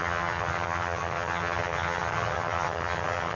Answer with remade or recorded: remade